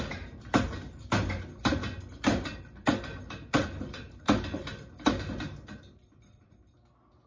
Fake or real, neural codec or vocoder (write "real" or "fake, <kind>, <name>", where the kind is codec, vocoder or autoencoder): real